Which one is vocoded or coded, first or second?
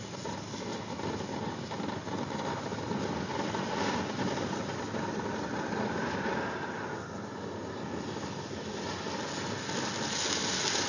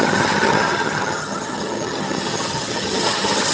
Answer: second